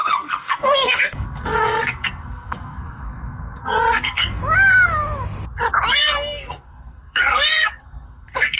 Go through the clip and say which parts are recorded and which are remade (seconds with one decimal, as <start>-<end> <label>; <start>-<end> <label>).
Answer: 0.0-4.4 remade; 4.4-5.9 recorded; 5.9-8.6 remade

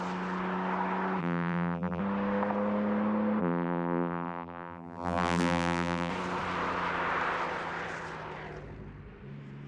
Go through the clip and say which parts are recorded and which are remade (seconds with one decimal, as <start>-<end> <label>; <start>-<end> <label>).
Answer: 0.0-1.2 recorded; 1.2-2.0 remade; 2.0-3.4 recorded; 3.4-6.1 remade; 6.1-9.7 recorded

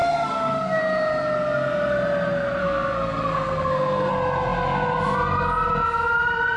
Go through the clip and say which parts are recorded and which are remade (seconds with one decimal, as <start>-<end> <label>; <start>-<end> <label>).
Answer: 0.0-0.8 remade; 0.8-2.6 recorded; 2.6-4.1 remade; 4.1-6.6 recorded